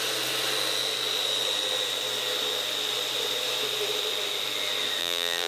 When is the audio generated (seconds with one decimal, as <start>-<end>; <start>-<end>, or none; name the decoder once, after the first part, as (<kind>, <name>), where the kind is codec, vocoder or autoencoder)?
5.0-5.5 (vocoder, BigVGAN v2)